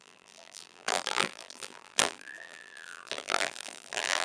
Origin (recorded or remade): remade